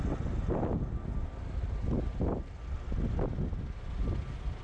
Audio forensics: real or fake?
real